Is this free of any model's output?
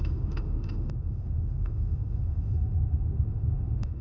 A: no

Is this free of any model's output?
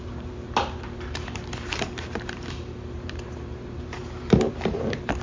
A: no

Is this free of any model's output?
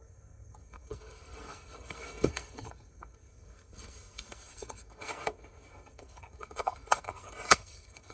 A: no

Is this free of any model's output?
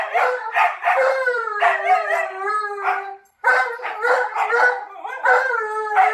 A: no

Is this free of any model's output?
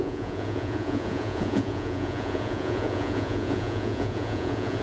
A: no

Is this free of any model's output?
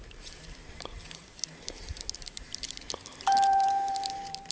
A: no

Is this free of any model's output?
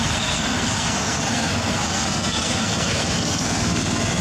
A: no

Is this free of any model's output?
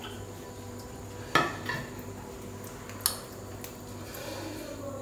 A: yes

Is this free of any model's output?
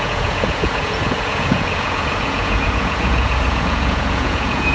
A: no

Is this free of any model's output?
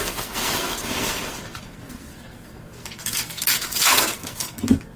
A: no